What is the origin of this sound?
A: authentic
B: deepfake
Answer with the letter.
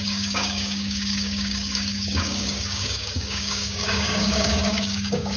B